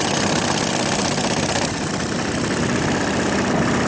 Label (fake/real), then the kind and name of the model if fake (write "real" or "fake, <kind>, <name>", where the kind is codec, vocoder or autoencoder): real